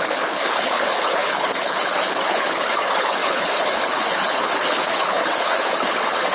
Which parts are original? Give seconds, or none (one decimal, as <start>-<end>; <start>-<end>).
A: none